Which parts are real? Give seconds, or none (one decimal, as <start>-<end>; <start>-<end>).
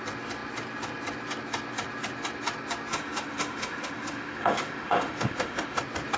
0.0-2.9; 5.8-6.2